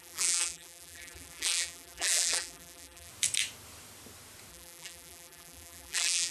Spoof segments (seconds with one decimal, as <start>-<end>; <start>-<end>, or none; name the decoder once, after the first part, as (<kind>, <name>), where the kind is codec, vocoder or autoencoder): 0.0-3.1 (vocoder, BigVGAN v2); 4.5-6.3